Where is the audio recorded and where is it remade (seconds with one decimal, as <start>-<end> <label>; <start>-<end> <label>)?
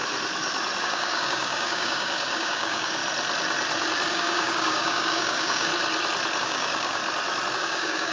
0.0-0.8 recorded; 0.8-3.0 remade; 3.0-4.1 recorded; 4.1-5.7 remade; 5.7-6.4 recorded; 6.4-7.0 remade; 7.0-7.5 recorded; 7.5-8.1 remade